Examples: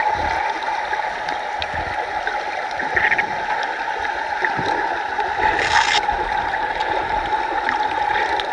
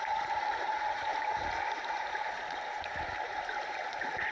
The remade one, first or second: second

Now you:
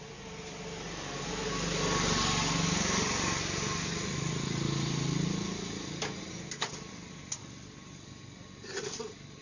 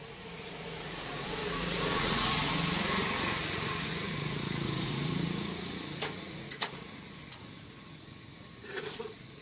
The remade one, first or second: second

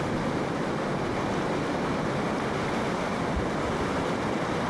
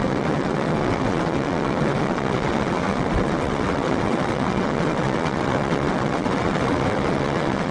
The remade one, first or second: second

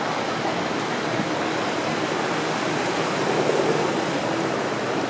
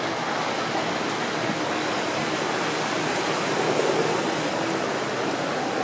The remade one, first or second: first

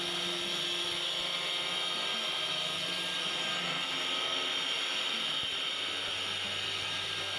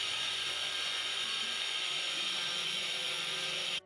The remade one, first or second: second